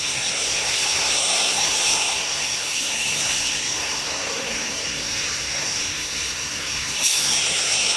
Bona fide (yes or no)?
no